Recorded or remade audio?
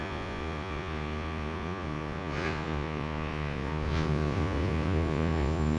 remade